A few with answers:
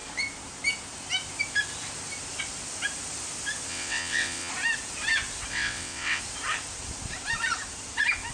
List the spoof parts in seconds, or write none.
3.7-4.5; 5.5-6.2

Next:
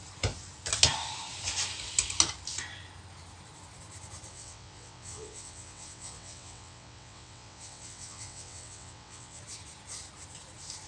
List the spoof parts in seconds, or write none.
4.3-9.4

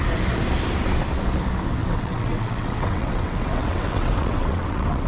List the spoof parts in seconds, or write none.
1.8-5.1

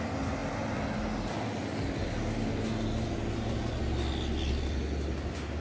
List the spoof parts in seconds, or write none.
none

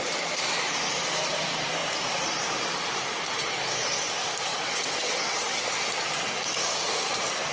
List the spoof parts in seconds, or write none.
4.5-5.6

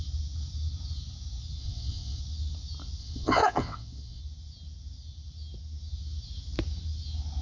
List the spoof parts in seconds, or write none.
1.6-2.2; 3.0-4.2

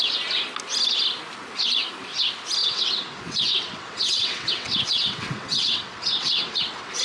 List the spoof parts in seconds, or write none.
2.6-7.0

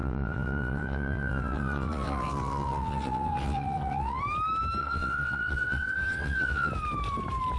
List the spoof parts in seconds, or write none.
0.0-4.2; 4.8-6.7